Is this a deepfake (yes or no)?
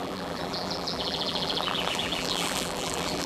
yes